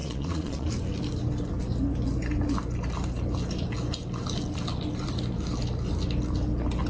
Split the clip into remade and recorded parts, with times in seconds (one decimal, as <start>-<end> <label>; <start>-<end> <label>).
0.0-0.7 remade; 0.7-6.9 recorded